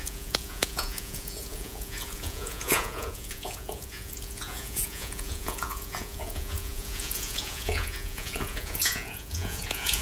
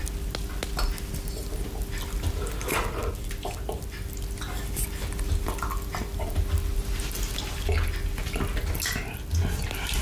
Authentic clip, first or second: second